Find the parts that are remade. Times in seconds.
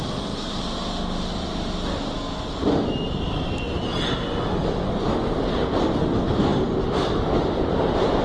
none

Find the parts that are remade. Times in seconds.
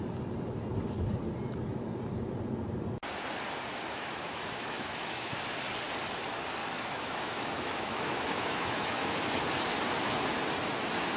3.7-5.3 (autoencoder, DAC-VAE); 6.6-9.2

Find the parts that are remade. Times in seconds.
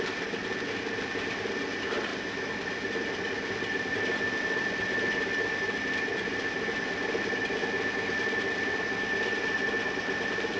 none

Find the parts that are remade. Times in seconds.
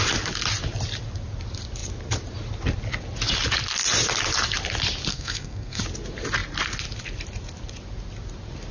5.1-5.8 (codec, SNAC)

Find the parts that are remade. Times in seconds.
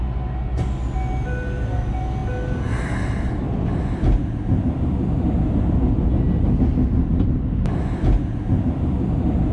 none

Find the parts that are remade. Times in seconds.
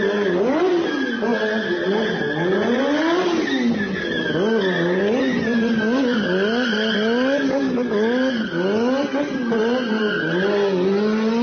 none